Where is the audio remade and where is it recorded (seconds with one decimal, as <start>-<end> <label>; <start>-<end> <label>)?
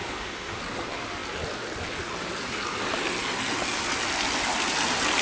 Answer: 0.0-0.6 remade; 0.6-5.2 recorded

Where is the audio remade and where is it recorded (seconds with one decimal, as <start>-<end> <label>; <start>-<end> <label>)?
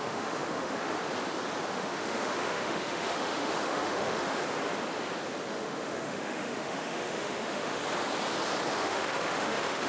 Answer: 0.0-1.0 remade; 1.0-1.7 recorded; 1.7-4.4 remade; 4.4-5.5 recorded; 5.5-7.8 remade; 7.8-8.7 recorded; 8.7-9.9 remade